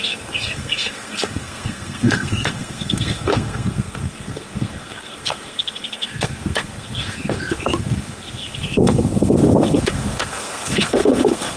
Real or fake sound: fake